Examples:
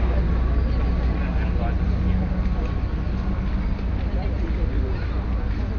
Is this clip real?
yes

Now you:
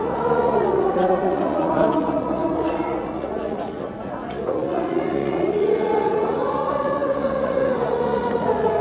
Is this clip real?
no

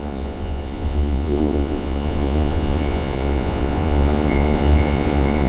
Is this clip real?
no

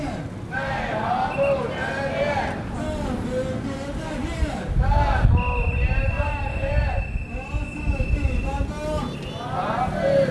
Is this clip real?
yes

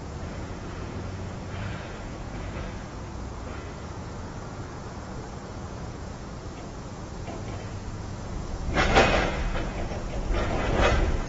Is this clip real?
no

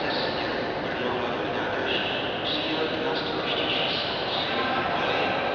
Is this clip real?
yes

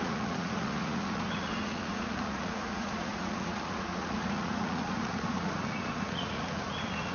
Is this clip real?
no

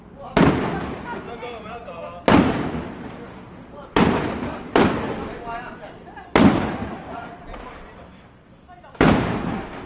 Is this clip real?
yes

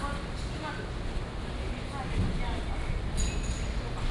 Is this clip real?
yes